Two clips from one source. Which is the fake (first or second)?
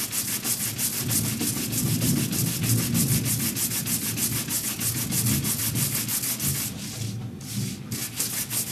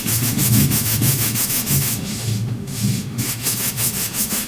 second